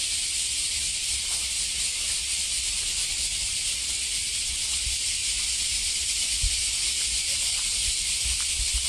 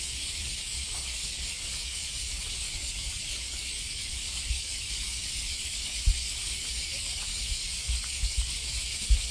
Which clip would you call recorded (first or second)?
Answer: first